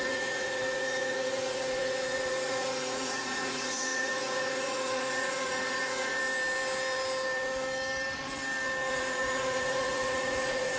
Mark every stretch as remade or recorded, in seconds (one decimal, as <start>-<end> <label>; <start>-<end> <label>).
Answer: 0.0-6.1 remade; 6.1-8.9 recorded; 8.9-10.8 remade